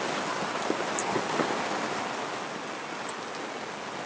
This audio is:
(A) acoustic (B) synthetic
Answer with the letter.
A